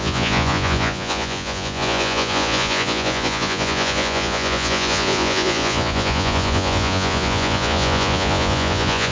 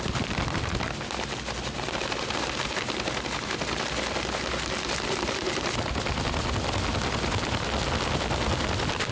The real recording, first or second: second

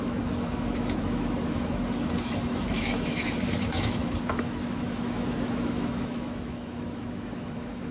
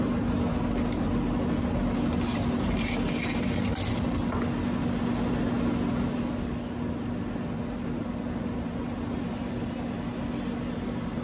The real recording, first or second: second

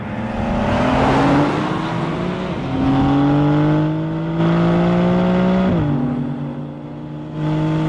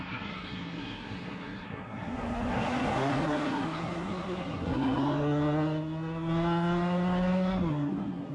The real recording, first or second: first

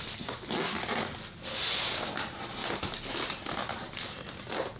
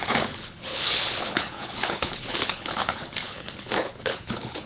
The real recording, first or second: first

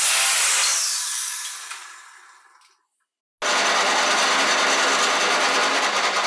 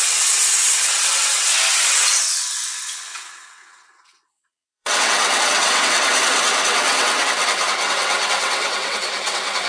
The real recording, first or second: first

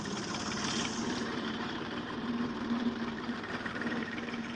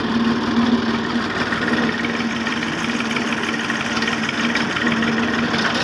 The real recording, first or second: second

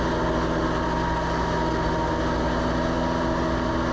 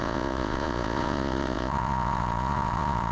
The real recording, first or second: first